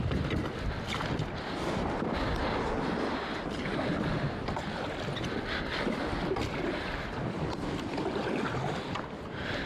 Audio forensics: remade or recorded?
recorded